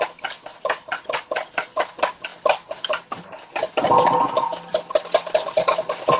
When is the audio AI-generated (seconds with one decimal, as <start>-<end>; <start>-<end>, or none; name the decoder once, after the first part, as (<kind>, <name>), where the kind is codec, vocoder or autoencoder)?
none